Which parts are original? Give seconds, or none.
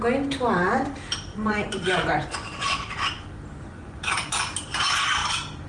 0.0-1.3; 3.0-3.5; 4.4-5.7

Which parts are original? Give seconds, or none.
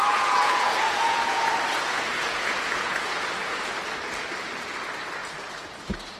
3.7-5.2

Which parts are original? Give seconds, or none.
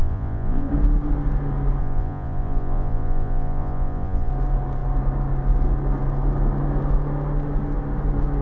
0.7-1.8; 4.3-8.4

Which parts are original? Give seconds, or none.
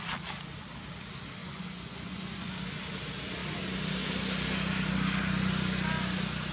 0.0-1.4; 2.5-6.5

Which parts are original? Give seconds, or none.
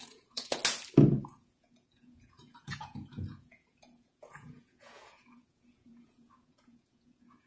0.6-1.1